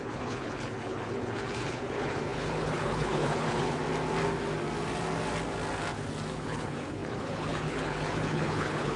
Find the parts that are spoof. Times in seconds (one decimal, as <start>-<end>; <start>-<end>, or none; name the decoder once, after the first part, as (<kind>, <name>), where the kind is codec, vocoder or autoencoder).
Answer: 0.0-3.8 (codec, HILCodec); 6.3-9.0